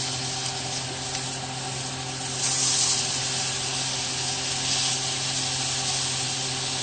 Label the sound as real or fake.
real